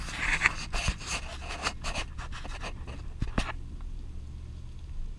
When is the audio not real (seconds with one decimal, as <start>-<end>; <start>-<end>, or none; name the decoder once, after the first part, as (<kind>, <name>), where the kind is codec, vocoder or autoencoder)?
none